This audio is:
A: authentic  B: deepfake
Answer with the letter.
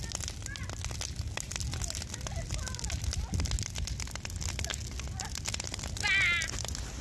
A